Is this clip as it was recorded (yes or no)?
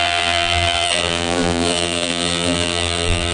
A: no